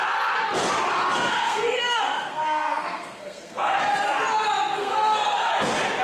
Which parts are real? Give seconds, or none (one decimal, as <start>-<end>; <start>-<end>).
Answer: 0.0-1.3; 3.8-4.8; 5.5-6.0